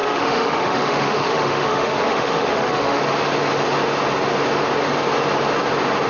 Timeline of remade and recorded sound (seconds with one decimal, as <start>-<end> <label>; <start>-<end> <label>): 0.0-3.0 remade; 3.0-6.1 recorded